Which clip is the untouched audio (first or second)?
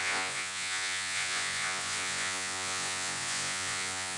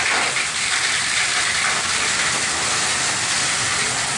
second